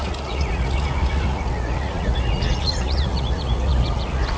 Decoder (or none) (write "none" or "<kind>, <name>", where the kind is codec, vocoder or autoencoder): vocoder, Vocos